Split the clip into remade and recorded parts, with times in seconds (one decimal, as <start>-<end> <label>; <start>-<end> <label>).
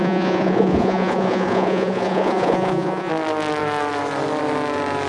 0.0-3.1 remade; 3.1-5.1 recorded